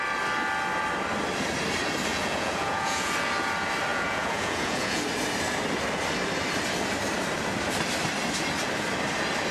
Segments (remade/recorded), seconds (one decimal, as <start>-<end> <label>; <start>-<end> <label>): 0.0-2.1 recorded; 2.1-3.1 remade; 3.1-3.9 recorded; 3.9-5.0 remade; 5.0-9.5 recorded